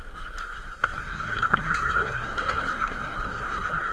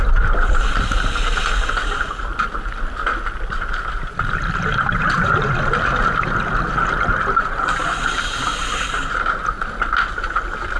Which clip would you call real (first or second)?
second